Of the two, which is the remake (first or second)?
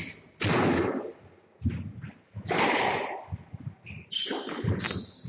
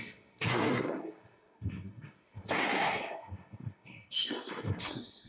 second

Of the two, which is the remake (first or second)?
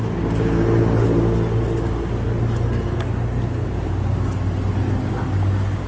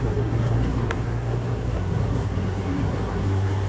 second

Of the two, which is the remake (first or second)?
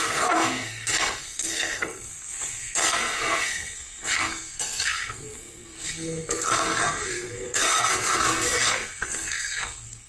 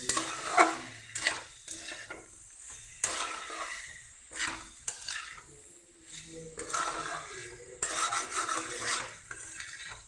first